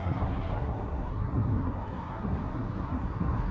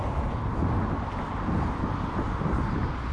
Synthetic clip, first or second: first